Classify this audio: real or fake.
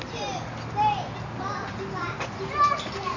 real